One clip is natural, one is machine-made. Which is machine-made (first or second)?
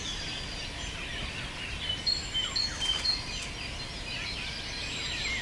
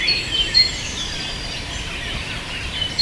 second